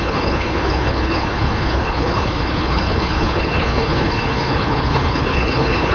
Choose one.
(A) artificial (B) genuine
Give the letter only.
A